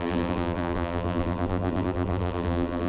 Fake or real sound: fake